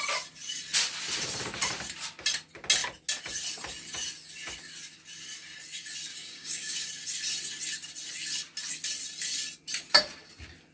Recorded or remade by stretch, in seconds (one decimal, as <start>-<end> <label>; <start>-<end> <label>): 0.0-6.1 recorded; 6.1-6.9 remade; 6.9-10.7 recorded